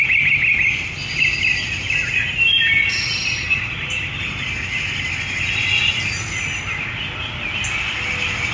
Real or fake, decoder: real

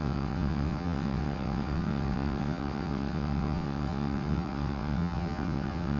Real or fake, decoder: fake, vocoder, WaveNeXt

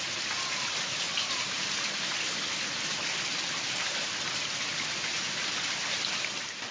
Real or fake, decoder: real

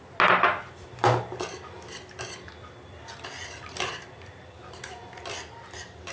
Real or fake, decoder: real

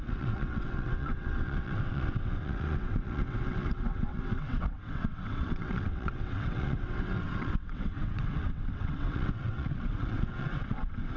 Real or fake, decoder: fake, vocoder, WaveNeXt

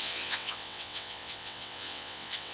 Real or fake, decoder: fake, vocoder, WaveNeXt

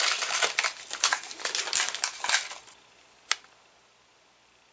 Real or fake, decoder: real